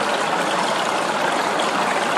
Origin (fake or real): real